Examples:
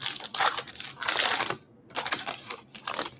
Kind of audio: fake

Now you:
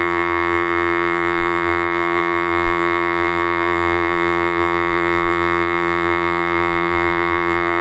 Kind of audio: fake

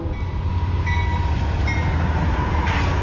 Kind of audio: real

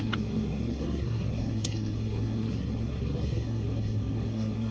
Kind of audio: fake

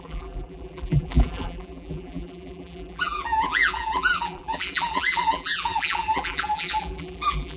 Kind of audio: fake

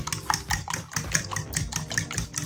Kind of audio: real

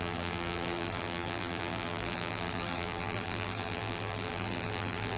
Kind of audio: fake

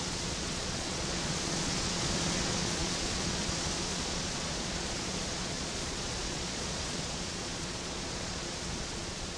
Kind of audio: fake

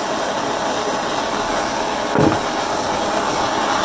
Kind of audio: real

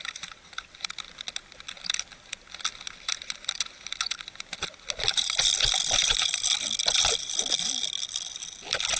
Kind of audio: real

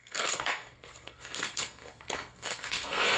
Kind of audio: fake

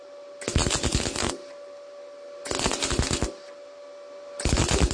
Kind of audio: real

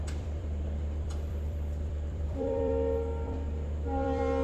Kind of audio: fake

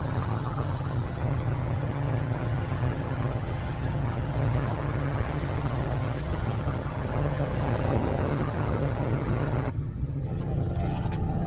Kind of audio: fake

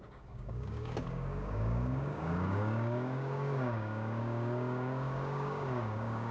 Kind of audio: fake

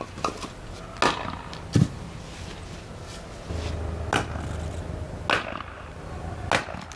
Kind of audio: real